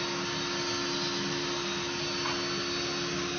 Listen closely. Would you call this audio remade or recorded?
recorded